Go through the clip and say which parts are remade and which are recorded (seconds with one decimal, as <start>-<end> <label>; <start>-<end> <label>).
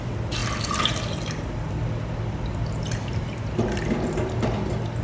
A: 0.0-5.0 recorded